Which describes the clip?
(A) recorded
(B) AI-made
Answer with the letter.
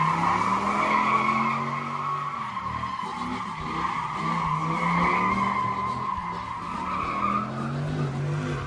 A